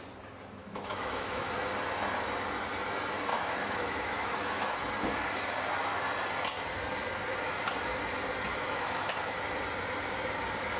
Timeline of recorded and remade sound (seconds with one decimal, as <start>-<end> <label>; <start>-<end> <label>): 0.0-0.6 recorded; 0.6-1.5 remade; 1.5-3.3 recorded; 3.3-4.7 remade; 4.7-8.5 recorded; 8.5-9.2 remade; 9.2-10.8 recorded